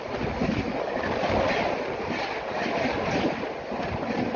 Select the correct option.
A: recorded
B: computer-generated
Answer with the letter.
A